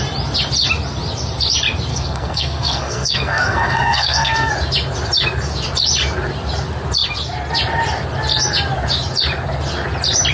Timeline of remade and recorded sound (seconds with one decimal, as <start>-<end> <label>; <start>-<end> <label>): 0.0-1.9 recorded; 1.9-4.5 remade; 4.5-10.3 recorded